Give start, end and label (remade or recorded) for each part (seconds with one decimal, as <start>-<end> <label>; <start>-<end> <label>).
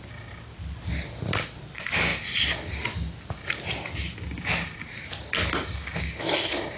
0.0-6.8 recorded